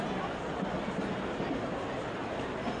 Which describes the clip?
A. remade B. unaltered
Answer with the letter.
B